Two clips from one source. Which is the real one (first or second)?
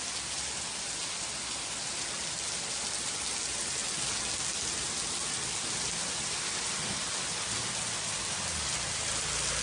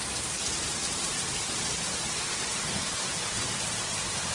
first